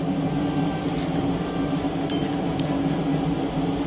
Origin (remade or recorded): recorded